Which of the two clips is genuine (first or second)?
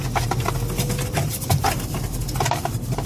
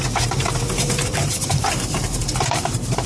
first